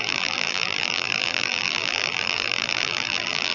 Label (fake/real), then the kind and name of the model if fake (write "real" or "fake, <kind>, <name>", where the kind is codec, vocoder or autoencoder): fake, vocoder, BigVGAN v2